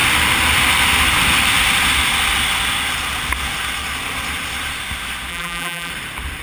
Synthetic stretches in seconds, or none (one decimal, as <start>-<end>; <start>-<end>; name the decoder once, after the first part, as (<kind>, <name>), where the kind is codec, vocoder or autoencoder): 5.3-5.9 (vocoder, BigVGAN v2)